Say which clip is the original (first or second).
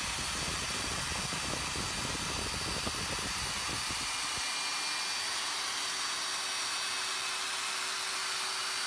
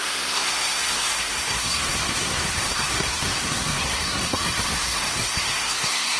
first